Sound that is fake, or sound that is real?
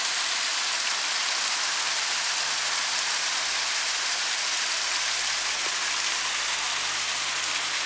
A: real